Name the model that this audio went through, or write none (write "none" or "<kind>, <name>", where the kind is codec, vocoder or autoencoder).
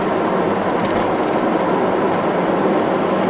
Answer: none